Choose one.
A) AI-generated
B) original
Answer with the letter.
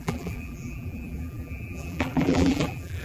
A